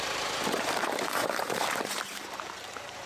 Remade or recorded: remade